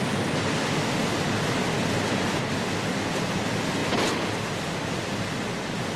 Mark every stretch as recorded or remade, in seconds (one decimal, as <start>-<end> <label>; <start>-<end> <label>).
0.0-6.0 recorded